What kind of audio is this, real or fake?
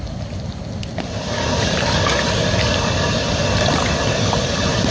real